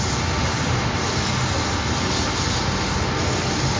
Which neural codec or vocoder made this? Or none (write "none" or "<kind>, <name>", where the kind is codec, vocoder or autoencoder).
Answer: none